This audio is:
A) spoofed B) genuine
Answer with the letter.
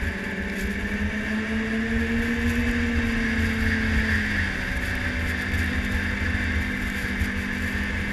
B